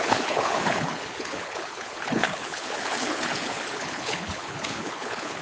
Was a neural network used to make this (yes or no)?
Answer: yes